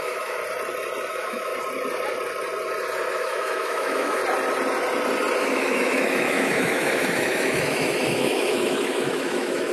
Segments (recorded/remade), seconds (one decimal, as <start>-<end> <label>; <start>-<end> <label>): 0.0-0.4 remade; 0.4-1.1 recorded; 1.1-1.5 remade; 1.5-3.1 recorded; 3.1-4.2 remade; 4.2-5.4 recorded; 5.4-9.7 remade